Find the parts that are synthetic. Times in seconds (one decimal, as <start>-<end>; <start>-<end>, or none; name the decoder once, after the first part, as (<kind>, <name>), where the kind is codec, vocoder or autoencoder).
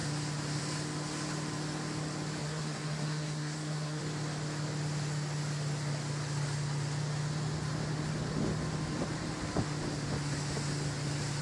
2.4-4.0 (codec, SNAC)